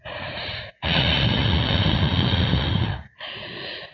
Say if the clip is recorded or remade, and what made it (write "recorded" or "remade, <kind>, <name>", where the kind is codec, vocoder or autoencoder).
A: remade, vocoder, Vocos